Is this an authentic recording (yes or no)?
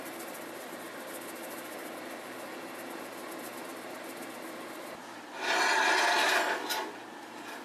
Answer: yes